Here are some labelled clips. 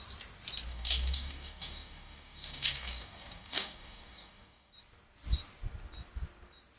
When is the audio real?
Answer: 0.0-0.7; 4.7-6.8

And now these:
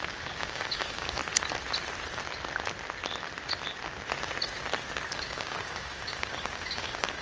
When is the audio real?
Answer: 1.2-5.1